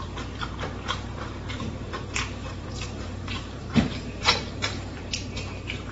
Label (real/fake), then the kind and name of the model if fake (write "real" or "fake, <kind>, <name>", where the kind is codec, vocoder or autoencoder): fake, vocoder, BigVGAN v2